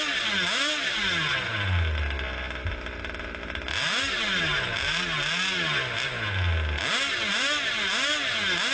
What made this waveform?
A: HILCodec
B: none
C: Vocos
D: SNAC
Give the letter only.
B